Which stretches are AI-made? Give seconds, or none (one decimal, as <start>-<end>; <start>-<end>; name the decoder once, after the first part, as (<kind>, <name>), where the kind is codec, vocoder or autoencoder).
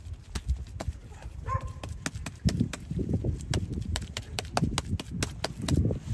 1.0-1.8 (vocoder, BigVGAN v2); 2.2-3.2; 3.9-4.5